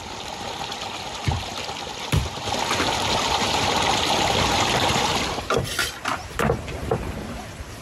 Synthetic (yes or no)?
yes